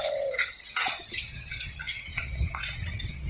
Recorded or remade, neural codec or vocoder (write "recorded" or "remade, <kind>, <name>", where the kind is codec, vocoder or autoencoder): remade, vocoder, WaveNeXt